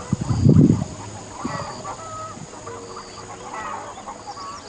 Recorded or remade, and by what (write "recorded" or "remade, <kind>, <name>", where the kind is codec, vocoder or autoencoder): recorded